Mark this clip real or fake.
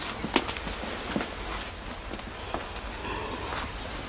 real